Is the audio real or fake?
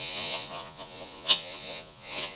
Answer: fake